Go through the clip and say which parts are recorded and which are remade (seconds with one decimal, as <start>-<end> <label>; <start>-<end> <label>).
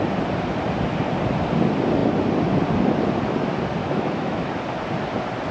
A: 0.0-3.8 recorded; 3.8-4.5 remade; 4.5-5.5 recorded